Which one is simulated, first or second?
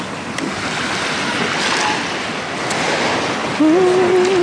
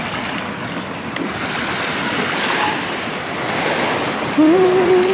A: second